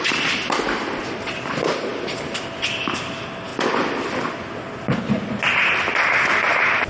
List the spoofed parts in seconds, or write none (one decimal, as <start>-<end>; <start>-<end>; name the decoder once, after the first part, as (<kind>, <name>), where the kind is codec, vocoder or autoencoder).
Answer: none